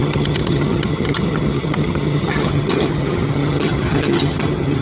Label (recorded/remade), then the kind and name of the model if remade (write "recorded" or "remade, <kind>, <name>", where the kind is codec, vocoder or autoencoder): remade, vocoder, HiFi-GAN